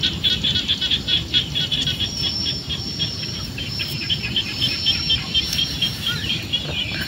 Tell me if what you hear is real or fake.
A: fake